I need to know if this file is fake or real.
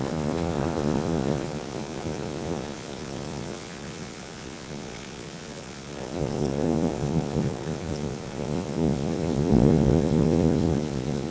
fake